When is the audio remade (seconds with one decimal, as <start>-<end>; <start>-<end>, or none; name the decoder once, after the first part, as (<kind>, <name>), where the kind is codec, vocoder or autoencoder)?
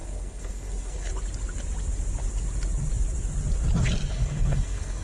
0.0-1.1 (codec, SNAC); 4.1-5.0